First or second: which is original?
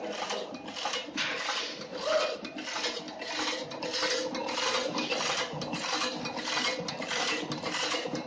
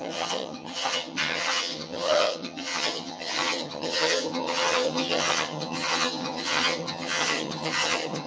first